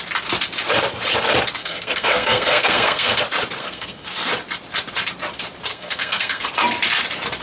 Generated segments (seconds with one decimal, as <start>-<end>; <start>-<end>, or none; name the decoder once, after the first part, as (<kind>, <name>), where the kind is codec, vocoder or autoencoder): 1.6-3.2 (codec, SNAC); 3.6-4.3; 5.7-6.5